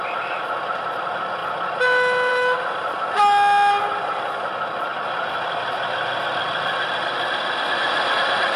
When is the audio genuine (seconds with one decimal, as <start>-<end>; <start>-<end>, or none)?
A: 0.0-4.9; 5.5-8.6